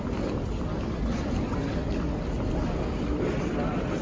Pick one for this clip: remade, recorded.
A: recorded